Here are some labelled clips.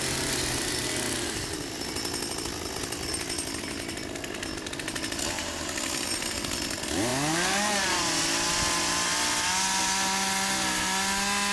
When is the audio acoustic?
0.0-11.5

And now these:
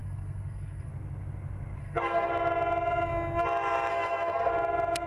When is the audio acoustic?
0.9-1.8; 2.3-3.9; 4.5-5.1

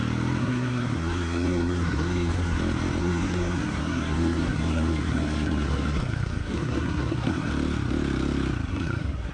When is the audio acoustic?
0.0-0.4; 2.6-3.0; 7.5-8.7

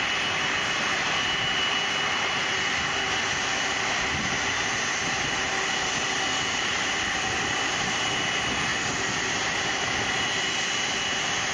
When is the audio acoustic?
0.0-11.5

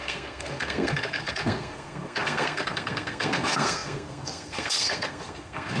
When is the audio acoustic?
none

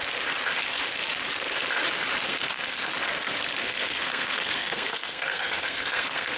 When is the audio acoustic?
0.0-2.3; 2.8-3.6